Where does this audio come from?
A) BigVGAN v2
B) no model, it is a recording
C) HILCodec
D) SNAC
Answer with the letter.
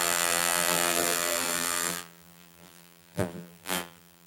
A